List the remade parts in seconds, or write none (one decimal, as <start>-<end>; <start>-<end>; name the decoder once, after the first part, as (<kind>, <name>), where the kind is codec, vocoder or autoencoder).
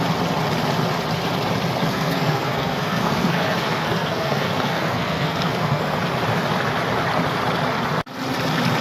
1.9-6.0 (codec, SNAC)